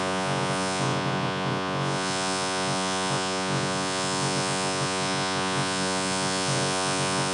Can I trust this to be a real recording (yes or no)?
no